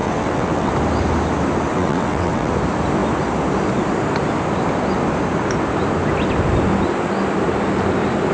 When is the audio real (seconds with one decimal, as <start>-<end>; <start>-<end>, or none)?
0.7-1.7; 2.5-8.3